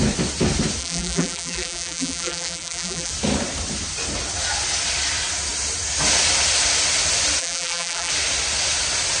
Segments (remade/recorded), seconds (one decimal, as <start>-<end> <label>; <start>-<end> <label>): 0.0-0.8 recorded; 0.8-3.1 remade; 3.1-7.4 recorded; 7.4-8.1 remade; 8.1-9.2 recorded